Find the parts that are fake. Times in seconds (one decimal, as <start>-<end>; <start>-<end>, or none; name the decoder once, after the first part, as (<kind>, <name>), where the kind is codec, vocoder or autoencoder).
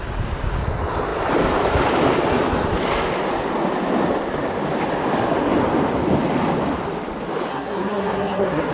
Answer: 7.5-8.7 (codec, SNAC)